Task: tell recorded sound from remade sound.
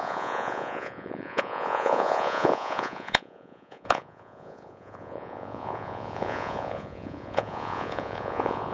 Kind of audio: remade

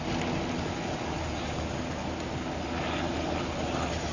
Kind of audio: recorded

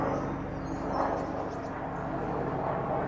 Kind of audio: recorded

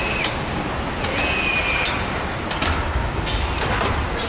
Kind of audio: recorded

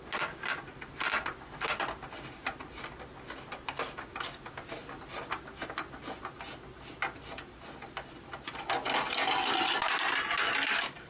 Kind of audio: recorded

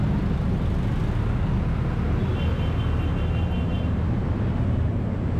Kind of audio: recorded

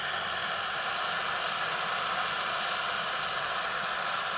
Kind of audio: recorded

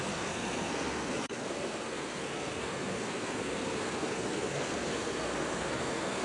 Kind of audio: remade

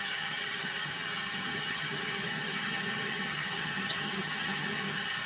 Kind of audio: remade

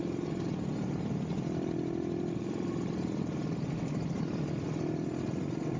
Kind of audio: recorded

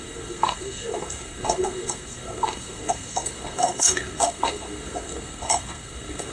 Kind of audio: remade